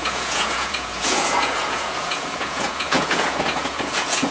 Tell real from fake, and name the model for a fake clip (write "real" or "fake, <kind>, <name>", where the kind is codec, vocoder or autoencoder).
fake, vocoder, Vocos